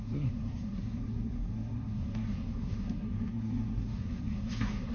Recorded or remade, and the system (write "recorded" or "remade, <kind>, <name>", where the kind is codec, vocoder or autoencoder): remade, codec, SNAC